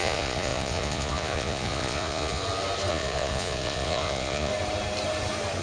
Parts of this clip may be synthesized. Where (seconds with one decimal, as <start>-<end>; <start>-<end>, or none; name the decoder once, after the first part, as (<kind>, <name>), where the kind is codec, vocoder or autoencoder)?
0.0-2.4 (vocoder, Vocos); 2.9-4.5